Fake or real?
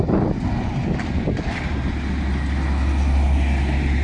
real